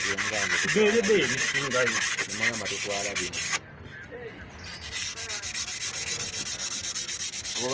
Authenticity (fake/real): real